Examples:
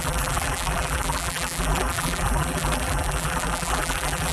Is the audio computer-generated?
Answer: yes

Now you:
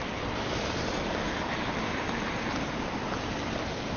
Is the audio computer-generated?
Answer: yes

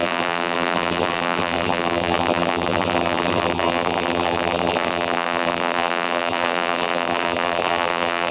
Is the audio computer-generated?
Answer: yes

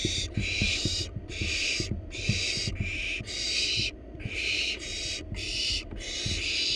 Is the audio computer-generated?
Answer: no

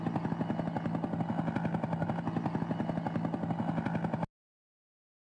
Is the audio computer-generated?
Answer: no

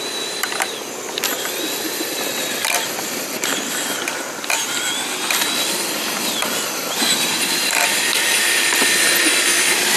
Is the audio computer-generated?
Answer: yes